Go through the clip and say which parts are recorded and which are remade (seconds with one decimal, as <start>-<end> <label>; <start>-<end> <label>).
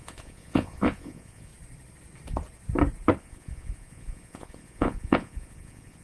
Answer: 0.0-1.5 remade; 1.5-3.2 recorded; 3.2-6.0 remade